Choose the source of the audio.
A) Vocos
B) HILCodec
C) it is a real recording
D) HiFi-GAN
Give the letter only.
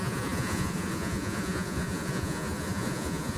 A